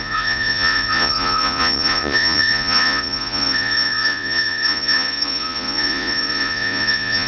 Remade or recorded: remade